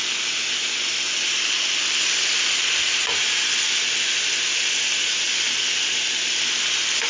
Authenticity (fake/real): real